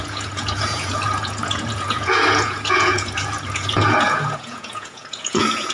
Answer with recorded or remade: remade